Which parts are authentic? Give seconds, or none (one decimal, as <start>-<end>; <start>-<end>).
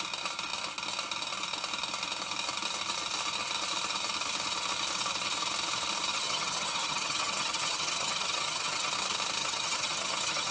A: 0.0-6.1; 8.9-9.4